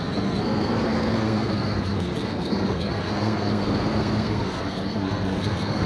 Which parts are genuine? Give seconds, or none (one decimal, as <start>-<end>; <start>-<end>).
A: none